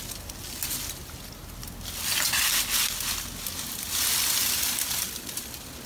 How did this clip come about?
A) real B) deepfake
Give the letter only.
A